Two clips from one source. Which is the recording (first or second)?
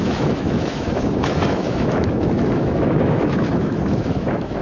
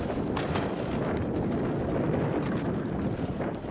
second